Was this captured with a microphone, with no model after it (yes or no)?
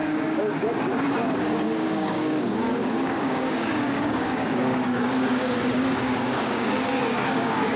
no